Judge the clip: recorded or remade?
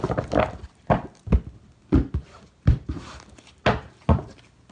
recorded